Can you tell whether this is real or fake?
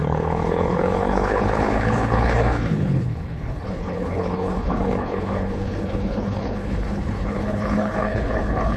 fake